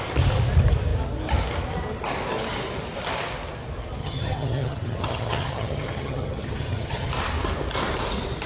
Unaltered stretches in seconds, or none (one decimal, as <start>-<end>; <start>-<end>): 0.0-4.0; 7.1-8.5